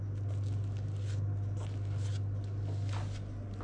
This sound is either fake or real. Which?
real